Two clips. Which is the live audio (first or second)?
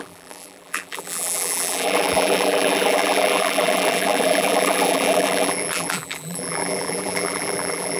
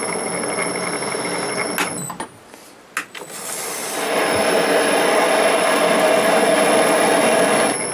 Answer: second